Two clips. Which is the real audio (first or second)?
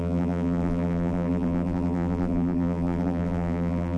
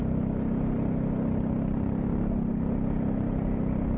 second